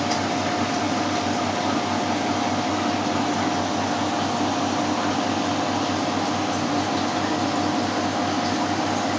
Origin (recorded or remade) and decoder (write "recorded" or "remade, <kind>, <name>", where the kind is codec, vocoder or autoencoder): recorded